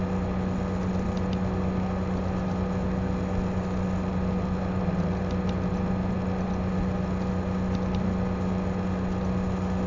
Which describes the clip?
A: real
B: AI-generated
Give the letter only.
A